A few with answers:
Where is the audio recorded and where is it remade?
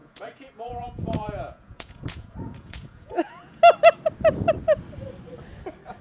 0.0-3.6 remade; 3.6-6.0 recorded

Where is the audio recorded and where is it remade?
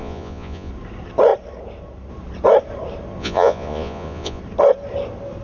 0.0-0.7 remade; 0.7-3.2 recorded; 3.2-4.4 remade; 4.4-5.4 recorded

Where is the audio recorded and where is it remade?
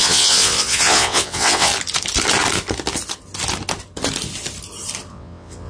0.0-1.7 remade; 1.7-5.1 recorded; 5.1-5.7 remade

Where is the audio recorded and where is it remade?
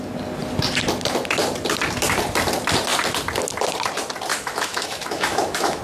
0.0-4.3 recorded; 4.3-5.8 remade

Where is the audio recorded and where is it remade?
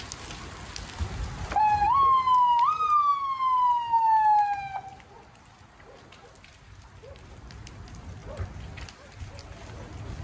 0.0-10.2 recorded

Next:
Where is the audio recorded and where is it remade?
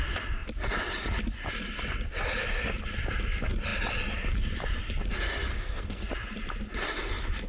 0.0-5.5 recorded; 5.5-6.1 remade; 6.1-7.5 recorded